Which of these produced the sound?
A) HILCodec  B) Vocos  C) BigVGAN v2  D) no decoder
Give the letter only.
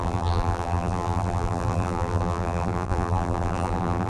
C